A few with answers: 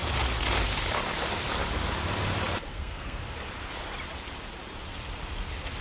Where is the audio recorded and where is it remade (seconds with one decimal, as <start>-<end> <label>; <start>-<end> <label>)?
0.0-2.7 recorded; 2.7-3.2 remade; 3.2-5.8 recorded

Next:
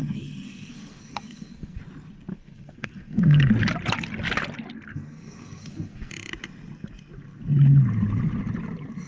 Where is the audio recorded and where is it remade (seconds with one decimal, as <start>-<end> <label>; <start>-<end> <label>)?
0.0-1.8 remade; 1.8-2.3 recorded; 2.3-3.5 remade; 3.5-4.9 recorded; 4.9-6.1 remade; 6.1-9.1 recorded

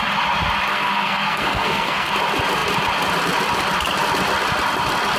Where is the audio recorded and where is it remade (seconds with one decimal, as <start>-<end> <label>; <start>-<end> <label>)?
0.0-0.7 recorded; 0.7-2.1 remade; 2.1-5.2 recorded